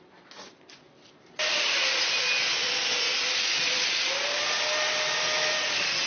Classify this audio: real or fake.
real